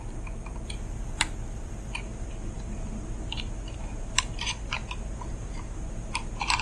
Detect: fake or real fake